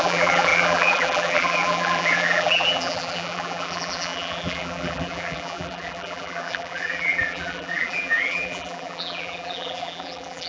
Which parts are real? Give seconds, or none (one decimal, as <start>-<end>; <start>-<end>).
none